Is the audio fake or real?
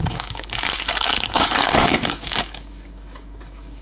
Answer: fake